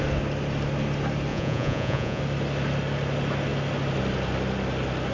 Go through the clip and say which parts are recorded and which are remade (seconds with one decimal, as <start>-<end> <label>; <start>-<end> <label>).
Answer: 0.0-1.3 recorded; 1.3-2.2 remade; 2.2-5.1 recorded